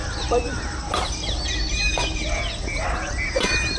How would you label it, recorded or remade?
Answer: recorded